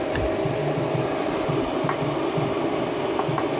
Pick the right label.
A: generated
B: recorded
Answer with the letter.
B